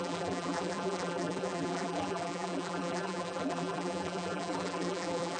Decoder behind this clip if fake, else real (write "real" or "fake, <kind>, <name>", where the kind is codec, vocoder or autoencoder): fake, vocoder, BigVGAN v2